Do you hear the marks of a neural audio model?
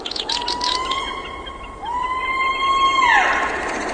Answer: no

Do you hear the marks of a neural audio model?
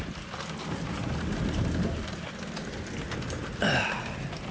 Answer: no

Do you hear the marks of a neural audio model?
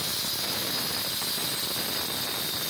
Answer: no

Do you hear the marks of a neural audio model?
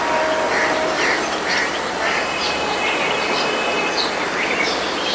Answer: no